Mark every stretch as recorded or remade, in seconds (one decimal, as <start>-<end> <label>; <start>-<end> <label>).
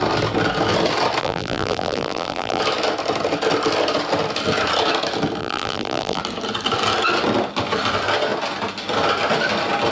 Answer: 0.0-1.2 recorded; 1.2-2.6 remade; 2.6-5.4 recorded; 5.4-6.2 remade; 6.2-9.9 recorded